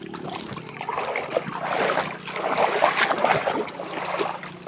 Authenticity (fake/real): real